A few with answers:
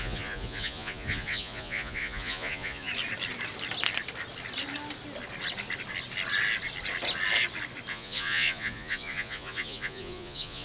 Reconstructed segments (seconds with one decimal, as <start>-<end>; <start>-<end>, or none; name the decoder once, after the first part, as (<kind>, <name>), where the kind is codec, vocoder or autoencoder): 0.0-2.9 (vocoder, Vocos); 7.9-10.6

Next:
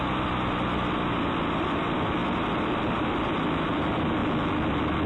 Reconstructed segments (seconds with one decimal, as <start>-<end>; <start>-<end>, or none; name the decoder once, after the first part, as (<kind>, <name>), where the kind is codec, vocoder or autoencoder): 0.0-2.2 (vocoder, BigVGAN v2); 2.8-4.2

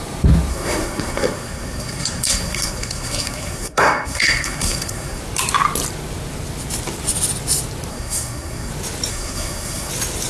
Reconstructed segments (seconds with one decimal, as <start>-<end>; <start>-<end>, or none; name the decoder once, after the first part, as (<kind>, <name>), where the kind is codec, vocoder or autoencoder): 0.5-5.2 (codec, SNAC); 7.9-8.7; 9.1-9.9

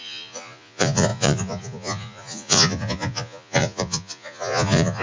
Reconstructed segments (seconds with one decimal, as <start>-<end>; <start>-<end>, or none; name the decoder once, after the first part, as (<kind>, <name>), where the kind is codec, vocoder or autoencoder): 0.0-5.0 (vocoder, Vocos)